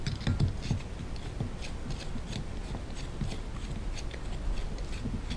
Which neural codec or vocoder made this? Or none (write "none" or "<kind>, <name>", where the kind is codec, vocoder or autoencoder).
none